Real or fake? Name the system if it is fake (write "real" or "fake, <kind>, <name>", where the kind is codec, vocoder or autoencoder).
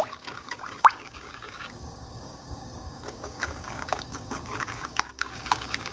fake, codec, DAC